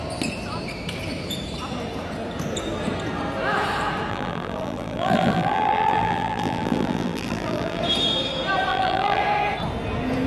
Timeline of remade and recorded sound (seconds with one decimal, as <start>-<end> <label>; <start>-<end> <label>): 0.0-4.1 recorded; 4.1-7.8 remade; 7.8-8.7 recorded; 8.7-9.2 remade; 9.2-10.3 recorded